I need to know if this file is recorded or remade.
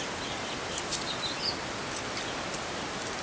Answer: recorded